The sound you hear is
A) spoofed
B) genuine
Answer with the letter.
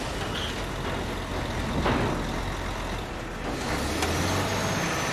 B